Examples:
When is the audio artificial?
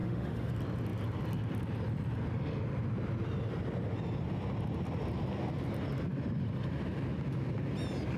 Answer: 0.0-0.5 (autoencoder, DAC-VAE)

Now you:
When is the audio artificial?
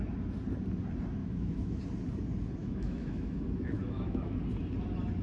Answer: 1.2-1.8 (autoencoder, DAC-VAE); 2.6-4.4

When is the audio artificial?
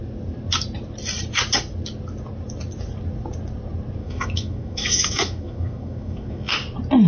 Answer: 4.0-6.5 (autoencoder, DAC-VAE)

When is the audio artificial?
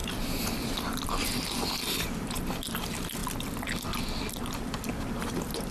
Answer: none